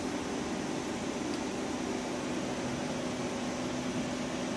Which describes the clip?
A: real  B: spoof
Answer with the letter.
A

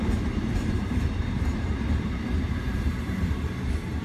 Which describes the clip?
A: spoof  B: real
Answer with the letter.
A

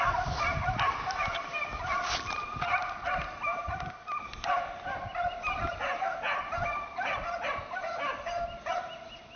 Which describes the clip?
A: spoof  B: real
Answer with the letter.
B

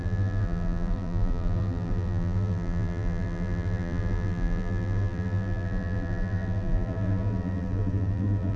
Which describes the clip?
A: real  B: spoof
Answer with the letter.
B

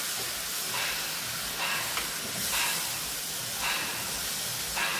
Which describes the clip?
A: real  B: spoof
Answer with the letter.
A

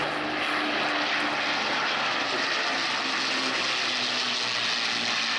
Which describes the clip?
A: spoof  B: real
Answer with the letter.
B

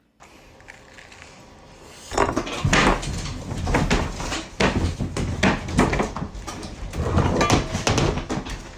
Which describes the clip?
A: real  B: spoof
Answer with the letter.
A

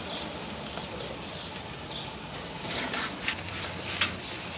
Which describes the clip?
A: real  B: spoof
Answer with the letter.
A